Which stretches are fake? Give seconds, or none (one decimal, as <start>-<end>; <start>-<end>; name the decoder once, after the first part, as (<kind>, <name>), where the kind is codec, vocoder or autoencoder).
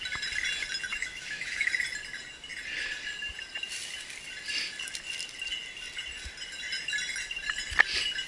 0.9-1.7 (autoencoder, DAC-VAE)